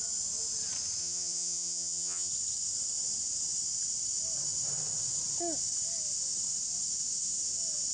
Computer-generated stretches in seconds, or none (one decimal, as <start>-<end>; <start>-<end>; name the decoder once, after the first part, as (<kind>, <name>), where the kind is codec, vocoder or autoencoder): 1.0-2.3 (vocoder, HiFi-GAN)